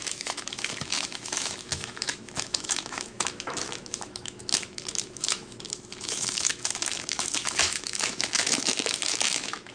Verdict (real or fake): fake